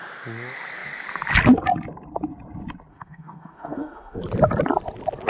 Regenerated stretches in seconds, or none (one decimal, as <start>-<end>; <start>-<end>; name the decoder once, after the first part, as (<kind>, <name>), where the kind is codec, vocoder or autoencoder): 2.9-4.2 (autoencoder, DAC-VAE)